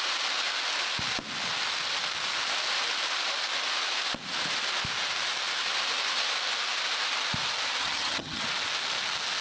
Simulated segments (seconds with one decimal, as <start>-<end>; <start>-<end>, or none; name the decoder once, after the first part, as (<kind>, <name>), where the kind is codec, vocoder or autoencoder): 7.8-8.4 (vocoder, HiFi-GAN)